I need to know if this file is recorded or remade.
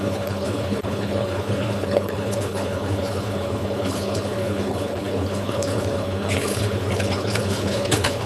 remade